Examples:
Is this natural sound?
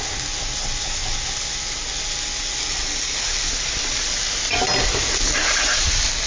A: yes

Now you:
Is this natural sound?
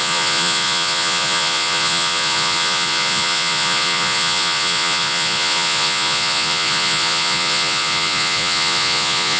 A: no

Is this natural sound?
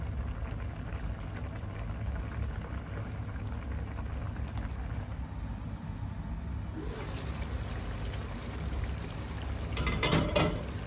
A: yes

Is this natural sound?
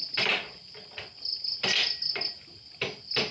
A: yes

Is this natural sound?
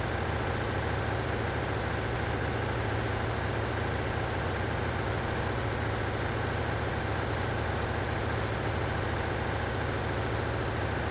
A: yes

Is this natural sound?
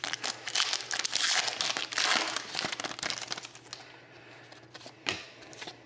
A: yes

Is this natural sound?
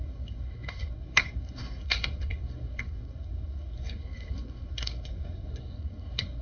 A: no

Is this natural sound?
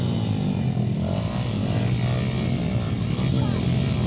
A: yes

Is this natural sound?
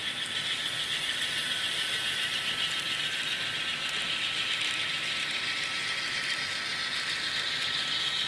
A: yes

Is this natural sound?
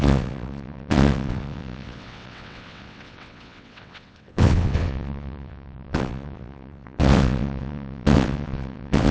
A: no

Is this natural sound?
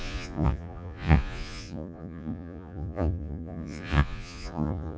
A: no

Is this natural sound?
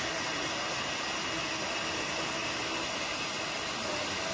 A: yes